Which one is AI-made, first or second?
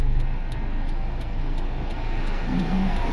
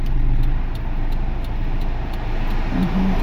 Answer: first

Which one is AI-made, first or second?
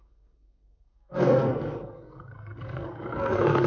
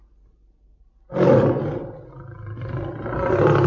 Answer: first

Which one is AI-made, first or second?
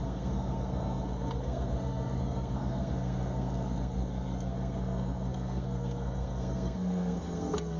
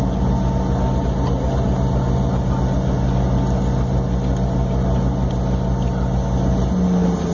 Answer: first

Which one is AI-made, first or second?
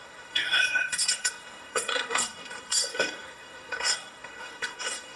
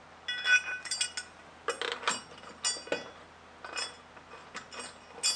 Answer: first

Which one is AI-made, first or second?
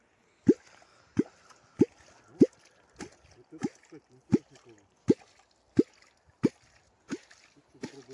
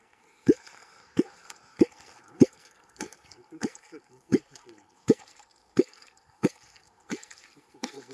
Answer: second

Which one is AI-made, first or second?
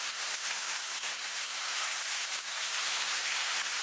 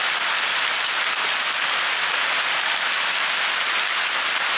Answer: first